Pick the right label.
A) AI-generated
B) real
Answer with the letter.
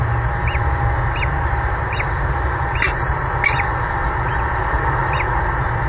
B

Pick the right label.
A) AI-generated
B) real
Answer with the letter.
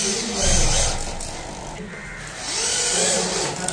B